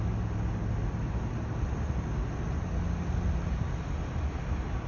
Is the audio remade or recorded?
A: recorded